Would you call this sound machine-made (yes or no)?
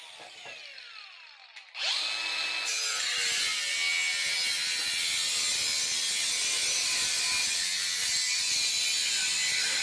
no